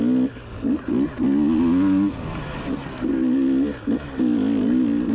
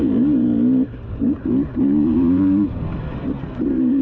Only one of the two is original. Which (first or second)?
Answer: first